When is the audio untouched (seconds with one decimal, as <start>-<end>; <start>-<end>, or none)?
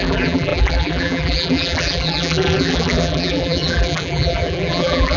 none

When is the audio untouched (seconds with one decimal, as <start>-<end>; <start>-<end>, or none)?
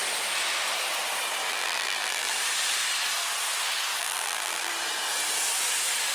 0.0-1.5; 2.3-4.0; 4.7-6.1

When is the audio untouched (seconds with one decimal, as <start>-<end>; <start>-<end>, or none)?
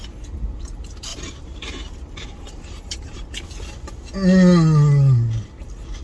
0.0-1.1; 3.2-6.0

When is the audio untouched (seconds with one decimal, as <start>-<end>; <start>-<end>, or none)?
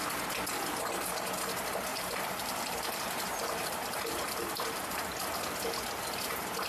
0.0-1.9; 5.1-6.7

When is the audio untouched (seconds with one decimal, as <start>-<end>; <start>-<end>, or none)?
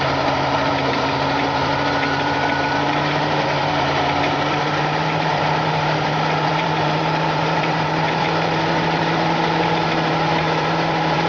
none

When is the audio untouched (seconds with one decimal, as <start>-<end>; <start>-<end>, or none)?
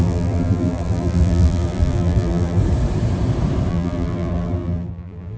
2.6-3.7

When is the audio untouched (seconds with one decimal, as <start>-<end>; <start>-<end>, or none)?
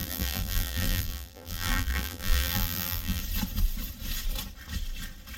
3.2-5.4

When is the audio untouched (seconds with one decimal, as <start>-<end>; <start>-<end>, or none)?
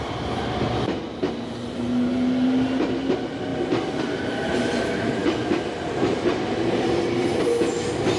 0.0-5.2; 7.4-8.2